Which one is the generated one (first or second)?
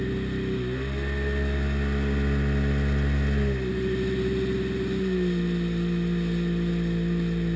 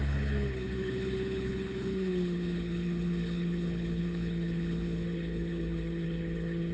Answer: second